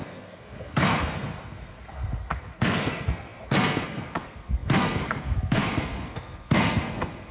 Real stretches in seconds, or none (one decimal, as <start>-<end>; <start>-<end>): none